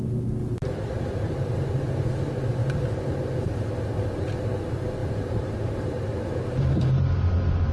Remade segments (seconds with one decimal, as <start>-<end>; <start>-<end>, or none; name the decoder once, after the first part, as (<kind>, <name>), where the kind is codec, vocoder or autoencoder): 0.4-1.5 (vocoder, BigVGAN v2); 2.6-3.5; 5.0-5.8